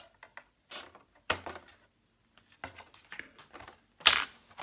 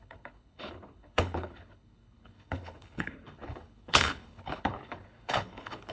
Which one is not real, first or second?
second